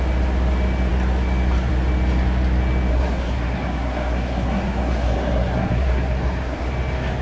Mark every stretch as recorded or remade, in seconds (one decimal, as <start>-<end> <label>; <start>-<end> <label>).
0.0-2.9 recorded; 2.9-6.7 remade; 6.7-7.2 recorded